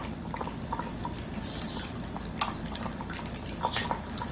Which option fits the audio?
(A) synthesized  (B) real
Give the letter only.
B